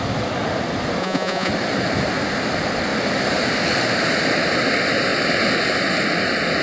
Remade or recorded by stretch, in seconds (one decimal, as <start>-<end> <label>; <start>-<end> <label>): 0.0-1.0 recorded; 1.0-1.5 remade; 1.5-6.6 recorded

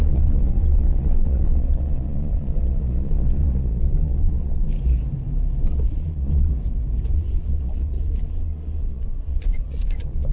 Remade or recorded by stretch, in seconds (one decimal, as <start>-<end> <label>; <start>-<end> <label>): 0.0-4.7 remade; 4.7-5.6 recorded; 5.6-6.5 remade; 6.5-7.1 recorded; 7.1-10.3 remade